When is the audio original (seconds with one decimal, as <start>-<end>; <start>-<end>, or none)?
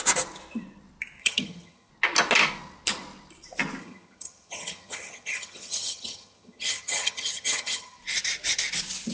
0.0-1.2; 1.9-3.8; 8.0-9.1